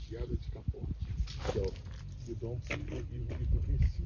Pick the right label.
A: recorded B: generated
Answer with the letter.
A